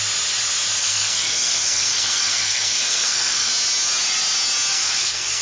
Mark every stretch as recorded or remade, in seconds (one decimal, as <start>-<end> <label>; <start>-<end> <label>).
0.0-0.8 recorded; 0.8-3.5 remade; 3.5-4.7 recorded; 4.7-5.4 remade